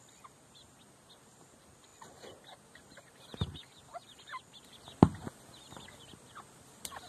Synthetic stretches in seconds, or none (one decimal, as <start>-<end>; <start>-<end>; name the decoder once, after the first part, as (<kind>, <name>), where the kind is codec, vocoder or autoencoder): none